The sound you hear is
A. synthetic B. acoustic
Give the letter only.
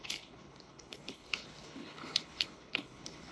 A